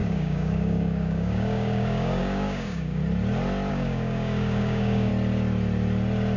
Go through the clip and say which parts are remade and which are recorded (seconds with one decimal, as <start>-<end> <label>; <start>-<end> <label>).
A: 0.0-3.0 remade; 3.0-3.7 recorded; 3.7-5.1 remade; 5.1-6.4 recorded

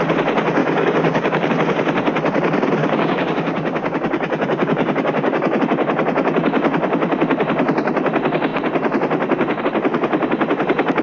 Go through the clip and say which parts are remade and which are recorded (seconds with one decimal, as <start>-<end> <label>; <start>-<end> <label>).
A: 0.0-0.6 recorded; 0.6-1.5 remade; 1.5-2.8 recorded; 2.8-5.6 remade; 5.6-11.0 recorded

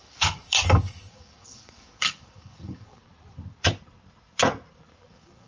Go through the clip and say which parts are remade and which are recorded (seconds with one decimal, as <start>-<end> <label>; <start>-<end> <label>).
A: 0.0-3.0 remade; 3.0-5.1 recorded; 5.1-5.5 remade

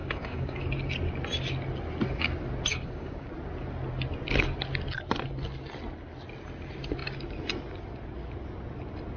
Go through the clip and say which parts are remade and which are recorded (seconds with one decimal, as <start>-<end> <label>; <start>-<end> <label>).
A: 0.0-0.6 remade; 0.6-2.7 recorded; 2.7-3.3 remade; 3.3-9.2 recorded

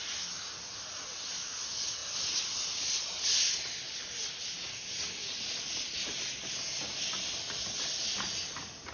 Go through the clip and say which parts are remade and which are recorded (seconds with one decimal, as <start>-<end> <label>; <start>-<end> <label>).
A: 0.0-8.9 recorded

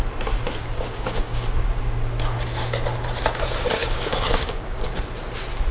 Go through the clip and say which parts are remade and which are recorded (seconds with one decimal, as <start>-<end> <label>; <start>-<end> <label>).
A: 0.0-0.6 recorded; 0.6-1.4 remade; 1.4-3.8 recorded; 3.8-5.0 remade; 5.0-5.7 recorded

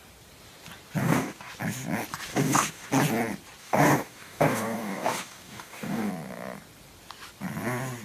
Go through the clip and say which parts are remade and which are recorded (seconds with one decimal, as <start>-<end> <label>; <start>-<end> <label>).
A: 0.0-1.0 recorded; 1.0-1.5 remade; 1.5-2.3 recorded; 2.3-2.9 remade; 2.9-3.6 recorded; 3.6-6.1 remade; 6.1-8.0 recorded

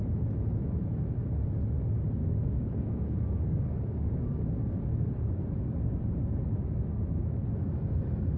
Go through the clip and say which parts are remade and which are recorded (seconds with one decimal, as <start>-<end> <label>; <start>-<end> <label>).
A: 0.0-2.2 recorded; 2.2-4.6 remade; 4.6-8.4 recorded